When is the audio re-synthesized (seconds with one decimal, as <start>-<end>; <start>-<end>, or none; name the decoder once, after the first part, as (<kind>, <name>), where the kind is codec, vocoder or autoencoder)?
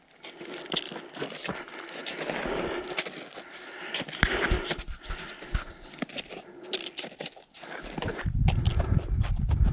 none